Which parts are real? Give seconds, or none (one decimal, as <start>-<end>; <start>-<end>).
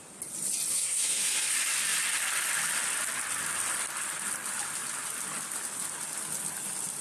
0.0-0.7; 1.5-7.0